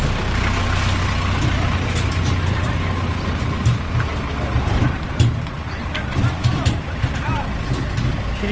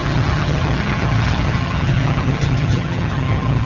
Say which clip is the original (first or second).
first